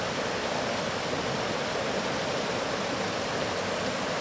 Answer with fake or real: real